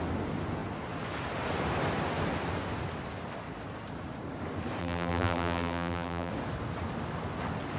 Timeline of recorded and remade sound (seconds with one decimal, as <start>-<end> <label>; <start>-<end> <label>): 0.0-4.8 recorded; 4.8-6.3 remade; 6.3-7.8 recorded